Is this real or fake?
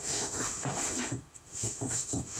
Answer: fake